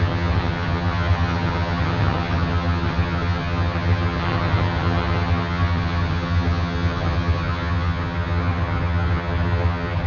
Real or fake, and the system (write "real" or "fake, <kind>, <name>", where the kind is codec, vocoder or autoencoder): fake, vocoder, HiFi-GAN